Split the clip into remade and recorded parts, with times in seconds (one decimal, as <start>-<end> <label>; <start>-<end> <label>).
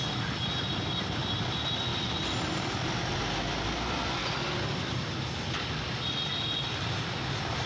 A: 0.0-1.9 recorded; 1.9-2.9 remade; 2.9-7.7 recorded